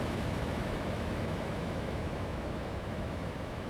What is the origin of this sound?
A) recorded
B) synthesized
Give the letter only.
B